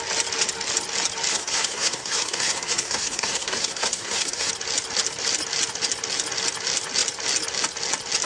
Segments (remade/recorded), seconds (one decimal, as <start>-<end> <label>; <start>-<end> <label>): 0.0-1.3 recorded; 1.3-4.5 remade; 4.5-8.3 recorded